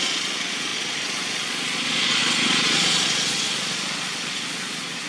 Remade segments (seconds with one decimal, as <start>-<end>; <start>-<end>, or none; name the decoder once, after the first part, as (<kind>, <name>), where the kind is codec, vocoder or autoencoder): 0.0-5.1 (vocoder, Vocos)